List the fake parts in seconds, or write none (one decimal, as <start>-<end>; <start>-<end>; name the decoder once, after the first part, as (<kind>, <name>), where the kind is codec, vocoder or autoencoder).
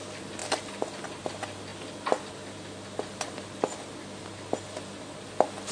none